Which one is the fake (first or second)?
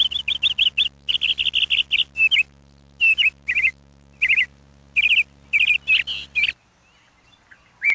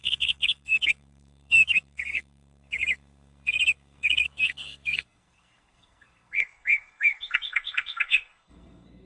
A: second